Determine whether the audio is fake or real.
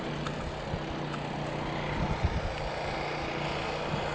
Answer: real